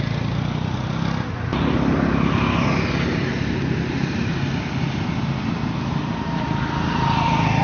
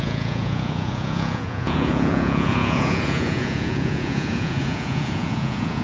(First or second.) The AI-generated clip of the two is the second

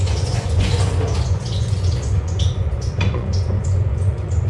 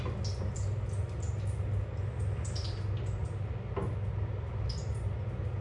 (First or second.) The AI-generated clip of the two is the first